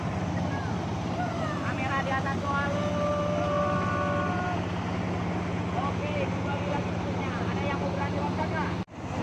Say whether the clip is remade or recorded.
recorded